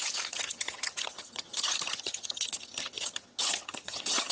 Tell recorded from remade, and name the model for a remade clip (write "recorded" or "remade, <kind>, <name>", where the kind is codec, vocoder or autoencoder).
remade, vocoder, HiFi-GAN